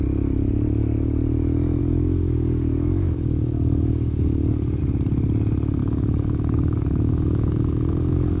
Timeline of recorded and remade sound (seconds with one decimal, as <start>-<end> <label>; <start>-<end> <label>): 0.0-1.8 recorded; 1.8-4.8 remade; 4.8-5.8 recorded; 5.8-8.4 remade